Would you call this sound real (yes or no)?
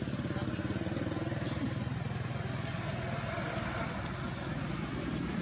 yes